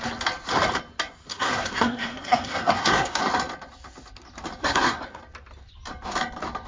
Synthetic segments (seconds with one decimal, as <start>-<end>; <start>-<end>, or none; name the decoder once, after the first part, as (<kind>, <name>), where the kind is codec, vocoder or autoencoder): 1.3-3.2 (codec, SNAC); 4.6-5.2